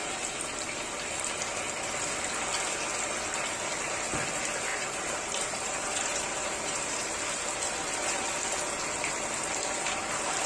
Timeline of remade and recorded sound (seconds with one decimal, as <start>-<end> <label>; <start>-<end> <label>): 0.0-4.7 recorded; 4.7-7.2 remade; 7.2-10.5 recorded